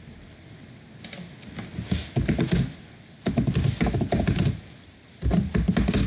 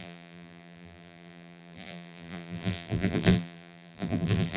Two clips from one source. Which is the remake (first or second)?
second